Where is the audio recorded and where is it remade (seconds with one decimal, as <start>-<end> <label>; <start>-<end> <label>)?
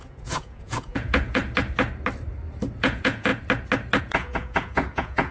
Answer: 0.0-1.4 remade; 1.4-2.8 recorded; 2.8-3.3 remade; 3.3-4.0 recorded; 4.0-5.3 remade